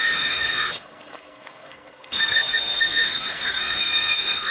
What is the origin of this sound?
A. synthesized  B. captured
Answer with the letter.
A